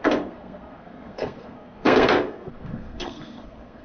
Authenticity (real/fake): fake